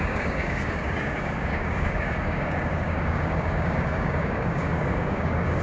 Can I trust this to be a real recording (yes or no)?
no